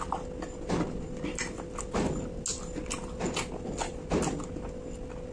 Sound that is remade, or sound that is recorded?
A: recorded